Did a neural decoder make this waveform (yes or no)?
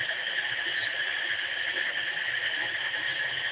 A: no